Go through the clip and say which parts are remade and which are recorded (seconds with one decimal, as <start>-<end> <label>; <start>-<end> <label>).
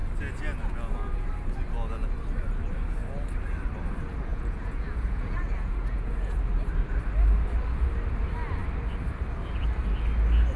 0.0-4.3 recorded; 4.3-6.4 remade; 6.4-10.6 recorded